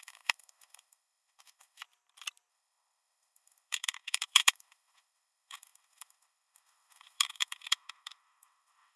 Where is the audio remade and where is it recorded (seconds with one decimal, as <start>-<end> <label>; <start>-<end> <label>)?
0.0-1.8 remade; 1.8-2.5 recorded; 2.5-9.0 remade